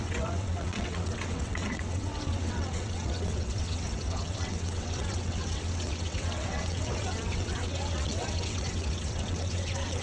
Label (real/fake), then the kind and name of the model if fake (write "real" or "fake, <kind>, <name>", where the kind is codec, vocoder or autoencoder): fake, vocoder, WaveNeXt